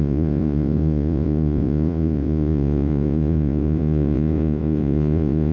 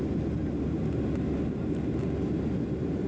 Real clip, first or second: second